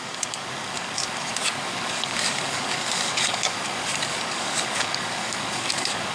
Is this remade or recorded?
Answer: remade